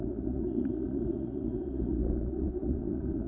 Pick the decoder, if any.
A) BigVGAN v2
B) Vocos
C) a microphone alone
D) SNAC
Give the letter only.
B